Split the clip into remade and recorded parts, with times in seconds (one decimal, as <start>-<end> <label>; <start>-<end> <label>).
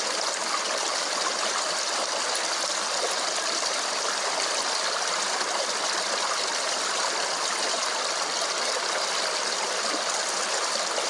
0.0-0.4 recorded; 0.4-1.0 remade; 1.0-11.1 recorded